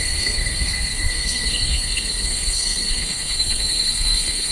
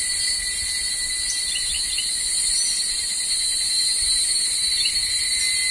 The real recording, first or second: second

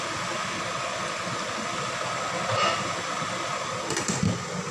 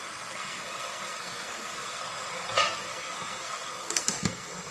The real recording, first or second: first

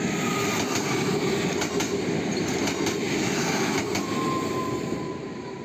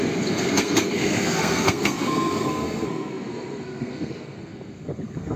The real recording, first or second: first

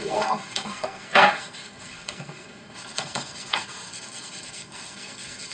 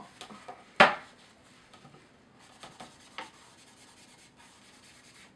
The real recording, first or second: second